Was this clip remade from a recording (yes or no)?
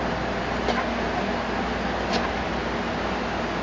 no